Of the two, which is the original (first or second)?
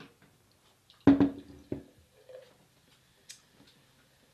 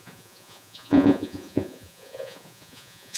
first